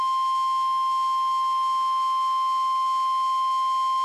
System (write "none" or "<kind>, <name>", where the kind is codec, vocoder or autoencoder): none